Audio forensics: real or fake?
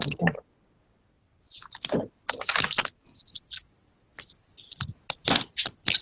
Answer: real